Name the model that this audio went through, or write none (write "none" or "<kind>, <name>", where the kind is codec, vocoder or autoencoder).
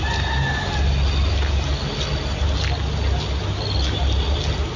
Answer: none